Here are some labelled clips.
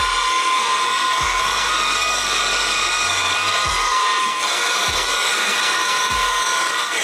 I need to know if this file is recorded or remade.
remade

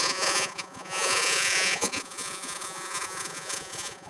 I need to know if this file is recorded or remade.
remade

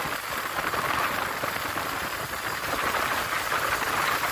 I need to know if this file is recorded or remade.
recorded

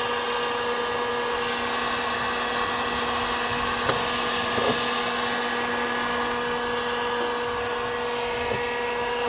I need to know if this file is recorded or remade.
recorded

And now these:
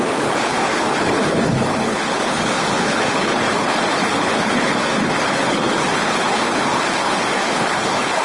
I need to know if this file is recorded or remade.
remade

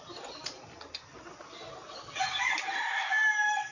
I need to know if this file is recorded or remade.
recorded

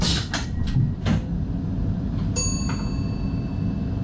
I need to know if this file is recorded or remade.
recorded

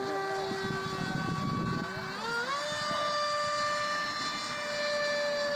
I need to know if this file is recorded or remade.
recorded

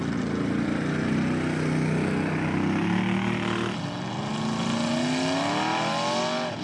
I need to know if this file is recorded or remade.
recorded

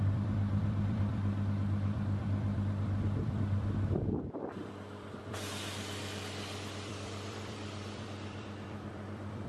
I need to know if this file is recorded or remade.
remade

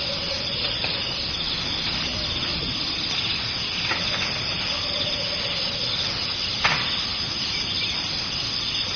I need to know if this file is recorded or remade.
recorded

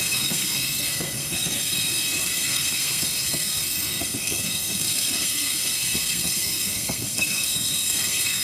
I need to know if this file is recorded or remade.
remade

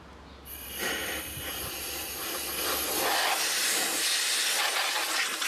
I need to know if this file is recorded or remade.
recorded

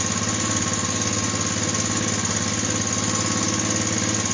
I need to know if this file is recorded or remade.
recorded